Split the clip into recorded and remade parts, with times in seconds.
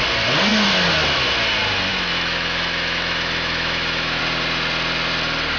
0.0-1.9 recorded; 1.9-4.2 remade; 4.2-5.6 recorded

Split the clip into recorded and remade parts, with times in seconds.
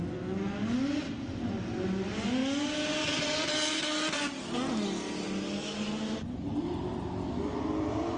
0.0-8.2 recorded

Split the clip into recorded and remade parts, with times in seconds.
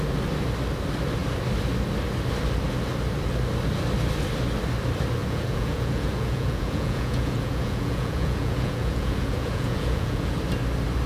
0.0-5.2 recorded; 5.2-10.4 remade; 10.4-11.1 recorded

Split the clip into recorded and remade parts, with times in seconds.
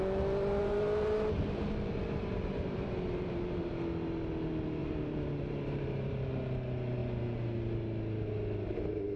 0.0-0.6 recorded; 0.6-3.7 remade; 3.7-4.8 recorded; 4.8-6.3 remade; 6.3-9.2 recorded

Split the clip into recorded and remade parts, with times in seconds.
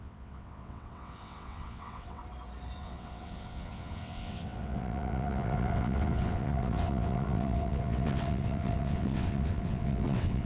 0.0-2.2 remade; 2.2-2.8 recorded; 2.8-10.5 remade